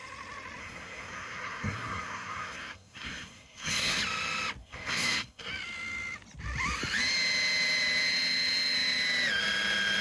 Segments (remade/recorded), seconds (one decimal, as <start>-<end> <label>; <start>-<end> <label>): 0.0-0.6 recorded; 0.6-4.0 remade; 4.0-4.6 recorded; 4.6-5.5 remade; 5.5-10.0 recorded